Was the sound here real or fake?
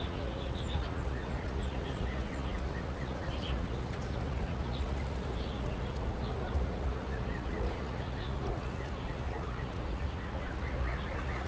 fake